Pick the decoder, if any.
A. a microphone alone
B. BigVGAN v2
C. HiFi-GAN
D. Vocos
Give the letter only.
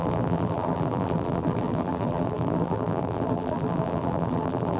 B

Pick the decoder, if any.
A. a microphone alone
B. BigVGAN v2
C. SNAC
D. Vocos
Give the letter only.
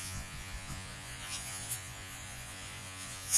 D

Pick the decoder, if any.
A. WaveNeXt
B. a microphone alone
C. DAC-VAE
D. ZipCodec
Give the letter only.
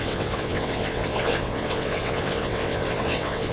A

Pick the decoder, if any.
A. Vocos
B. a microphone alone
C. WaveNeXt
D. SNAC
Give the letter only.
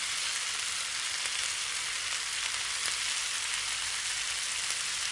B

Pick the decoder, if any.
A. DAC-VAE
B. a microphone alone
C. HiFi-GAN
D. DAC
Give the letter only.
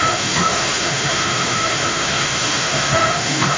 A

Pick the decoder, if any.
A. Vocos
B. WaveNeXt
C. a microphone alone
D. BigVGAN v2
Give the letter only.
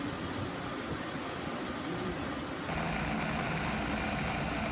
C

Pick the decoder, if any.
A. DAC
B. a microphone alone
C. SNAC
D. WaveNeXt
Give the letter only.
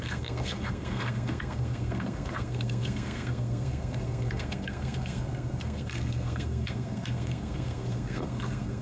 C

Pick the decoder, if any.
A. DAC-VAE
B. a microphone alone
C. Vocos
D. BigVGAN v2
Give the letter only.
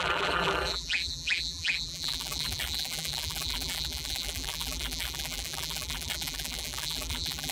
D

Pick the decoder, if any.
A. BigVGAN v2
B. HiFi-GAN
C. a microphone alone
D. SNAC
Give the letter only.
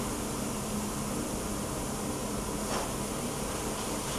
C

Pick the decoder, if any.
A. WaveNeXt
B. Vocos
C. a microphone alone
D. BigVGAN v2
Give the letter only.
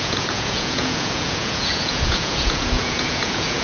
B